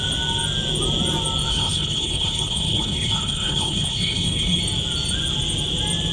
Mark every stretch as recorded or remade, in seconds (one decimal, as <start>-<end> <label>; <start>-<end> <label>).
0.0-1.5 recorded; 1.5-4.6 remade; 4.6-6.1 recorded